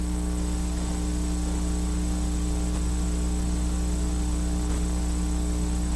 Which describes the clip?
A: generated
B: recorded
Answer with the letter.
B